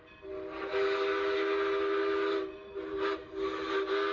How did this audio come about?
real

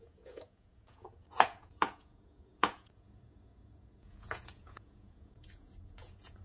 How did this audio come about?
fake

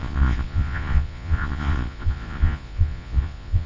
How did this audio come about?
fake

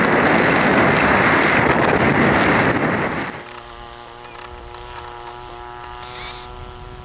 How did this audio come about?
real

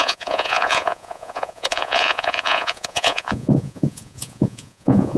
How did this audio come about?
fake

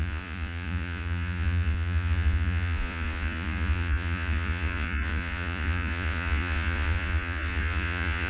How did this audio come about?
fake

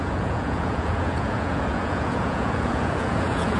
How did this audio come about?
fake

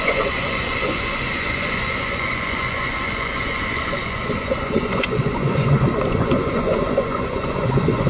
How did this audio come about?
fake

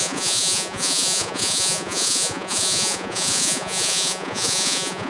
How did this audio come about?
fake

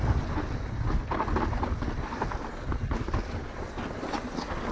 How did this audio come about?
real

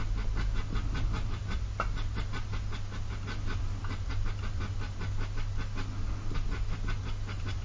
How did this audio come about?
real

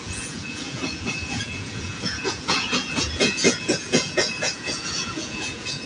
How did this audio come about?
fake